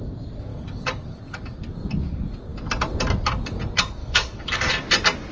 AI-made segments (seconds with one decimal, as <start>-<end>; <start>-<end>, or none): 0.5-1.2; 4.0-4.7